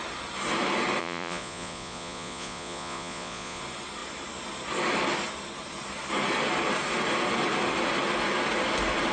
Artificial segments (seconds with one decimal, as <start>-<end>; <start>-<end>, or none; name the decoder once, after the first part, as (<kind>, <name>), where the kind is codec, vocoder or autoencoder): 1.0-3.6 (vocoder, Vocos)